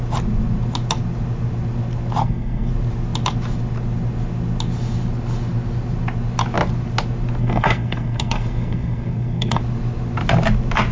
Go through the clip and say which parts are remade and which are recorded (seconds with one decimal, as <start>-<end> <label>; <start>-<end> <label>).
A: 0.0-2.2 recorded; 2.2-2.7 remade; 2.7-7.4 recorded; 7.4-9.6 remade; 9.6-10.9 recorded